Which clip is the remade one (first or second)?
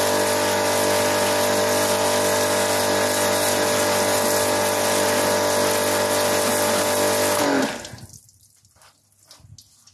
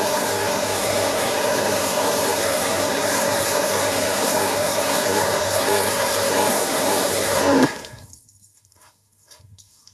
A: second